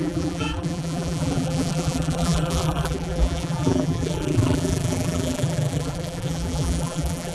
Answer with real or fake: fake